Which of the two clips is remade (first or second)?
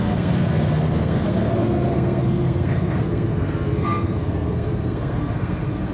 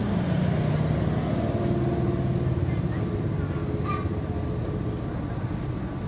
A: first